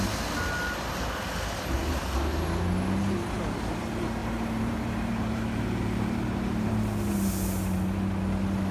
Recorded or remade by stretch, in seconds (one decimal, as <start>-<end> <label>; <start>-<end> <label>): 0.0-4.2 recorded; 4.2-6.7 remade; 6.7-8.7 recorded